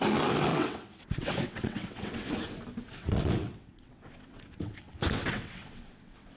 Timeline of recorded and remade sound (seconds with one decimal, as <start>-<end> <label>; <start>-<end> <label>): 0.0-0.5 recorded; 0.5-2.3 remade; 2.3-3.0 recorded; 3.0-6.4 remade